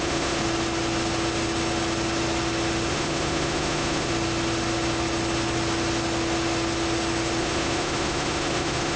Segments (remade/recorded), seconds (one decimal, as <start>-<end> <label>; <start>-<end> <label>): 0.0-0.4 remade; 0.4-2.9 recorded; 2.9-4.1 remade; 4.1-7.4 recorded; 7.4-9.0 remade